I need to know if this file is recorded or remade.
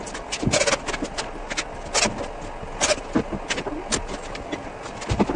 recorded